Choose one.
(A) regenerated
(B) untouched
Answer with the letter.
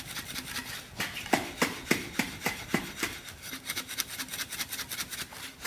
B